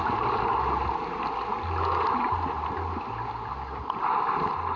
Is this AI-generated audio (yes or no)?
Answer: no